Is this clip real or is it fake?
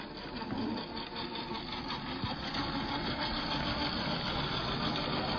real